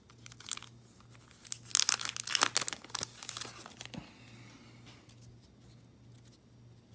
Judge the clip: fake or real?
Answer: real